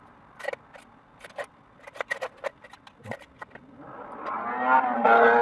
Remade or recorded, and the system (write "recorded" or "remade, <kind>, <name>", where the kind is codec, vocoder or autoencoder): recorded